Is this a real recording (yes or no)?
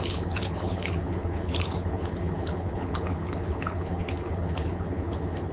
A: no